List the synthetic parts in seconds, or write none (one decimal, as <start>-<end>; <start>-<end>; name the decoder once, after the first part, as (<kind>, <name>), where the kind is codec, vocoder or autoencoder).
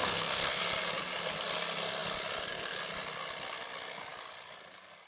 0.0-0.6 (codec, SNAC)